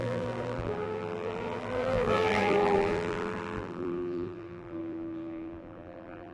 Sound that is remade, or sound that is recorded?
remade